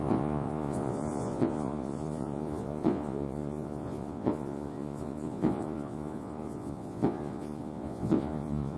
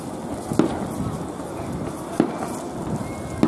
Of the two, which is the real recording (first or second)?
second